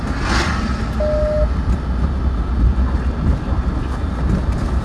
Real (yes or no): yes